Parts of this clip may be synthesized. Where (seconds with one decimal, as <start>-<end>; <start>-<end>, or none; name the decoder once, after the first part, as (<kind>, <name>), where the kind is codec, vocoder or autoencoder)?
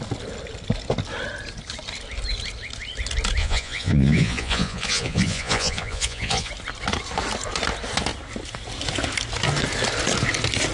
3.4-6.5 (vocoder, Vocos)